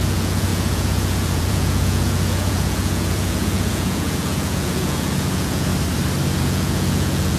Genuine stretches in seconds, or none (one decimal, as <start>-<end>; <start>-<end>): 5.7-6.4